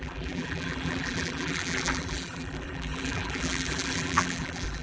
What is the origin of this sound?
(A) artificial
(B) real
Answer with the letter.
A